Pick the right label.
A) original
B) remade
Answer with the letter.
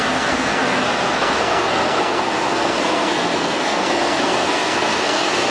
B